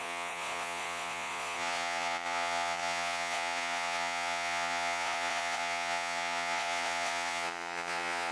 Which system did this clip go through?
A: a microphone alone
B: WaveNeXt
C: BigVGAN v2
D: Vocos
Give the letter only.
D